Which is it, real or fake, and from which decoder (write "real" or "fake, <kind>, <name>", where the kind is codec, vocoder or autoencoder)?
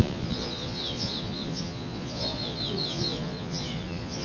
fake, vocoder, Vocos